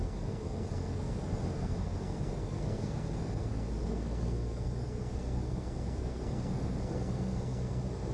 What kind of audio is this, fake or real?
fake